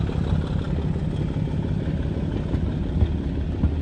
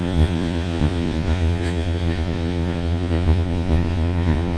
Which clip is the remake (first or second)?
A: second